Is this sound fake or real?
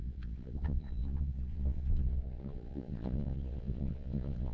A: fake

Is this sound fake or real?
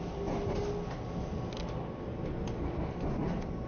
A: real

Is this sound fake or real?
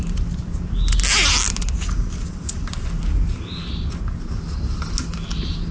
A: real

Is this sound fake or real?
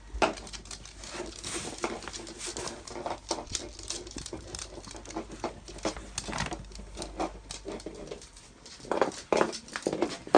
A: real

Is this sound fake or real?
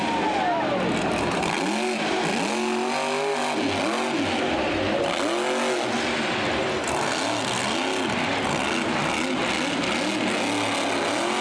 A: real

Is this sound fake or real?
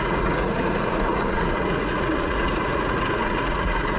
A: fake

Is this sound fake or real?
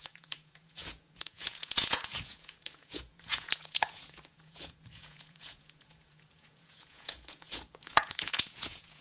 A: fake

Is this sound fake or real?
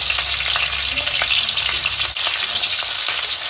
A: real